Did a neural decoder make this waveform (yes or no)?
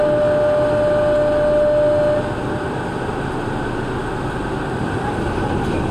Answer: no